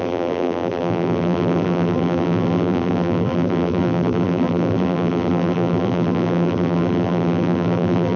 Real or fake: fake